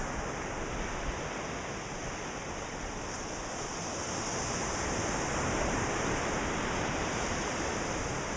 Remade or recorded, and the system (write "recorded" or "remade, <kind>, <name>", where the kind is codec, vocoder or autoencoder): recorded